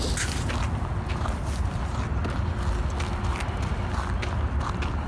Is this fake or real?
real